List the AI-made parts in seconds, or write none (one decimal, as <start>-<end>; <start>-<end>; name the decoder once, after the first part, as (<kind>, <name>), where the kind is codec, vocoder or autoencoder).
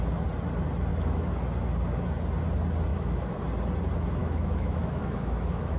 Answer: 0.9-1.4 (autoencoder, DAC-VAE); 2.9-3.4; 4.2-5.8